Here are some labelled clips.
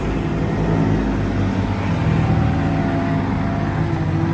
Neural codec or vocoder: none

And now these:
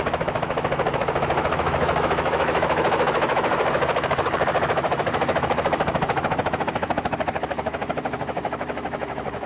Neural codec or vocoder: autoencoder, DAC-VAE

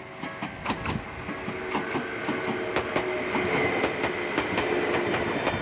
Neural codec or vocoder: none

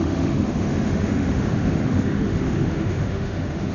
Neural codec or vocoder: autoencoder, DAC-VAE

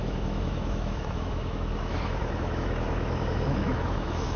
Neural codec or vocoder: autoencoder, DAC-VAE